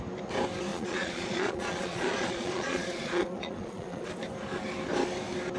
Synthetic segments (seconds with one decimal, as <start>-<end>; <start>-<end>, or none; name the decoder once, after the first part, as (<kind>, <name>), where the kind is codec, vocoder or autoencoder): 0.7-4.1 (vocoder, Vocos)

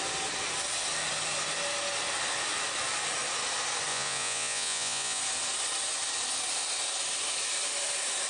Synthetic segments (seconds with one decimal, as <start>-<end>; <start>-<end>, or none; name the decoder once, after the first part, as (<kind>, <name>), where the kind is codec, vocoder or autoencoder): 3.9-5.2 (vocoder, Vocos)